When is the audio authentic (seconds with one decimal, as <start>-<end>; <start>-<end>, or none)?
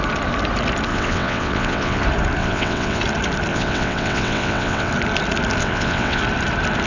0.0-0.9; 2.0-2.4; 3.0-3.5; 4.9-5.6; 6.2-6.9